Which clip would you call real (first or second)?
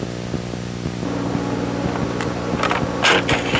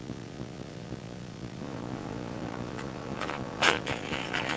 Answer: first